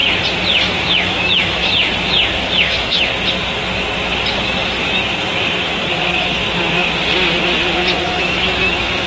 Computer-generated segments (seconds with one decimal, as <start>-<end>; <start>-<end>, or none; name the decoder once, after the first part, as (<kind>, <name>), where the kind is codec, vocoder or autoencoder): 0.6-1.6 (autoencoder, DAC-VAE); 2.4-3.1; 8.0-9.1